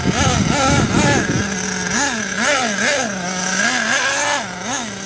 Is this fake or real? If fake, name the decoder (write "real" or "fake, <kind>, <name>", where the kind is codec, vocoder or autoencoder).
real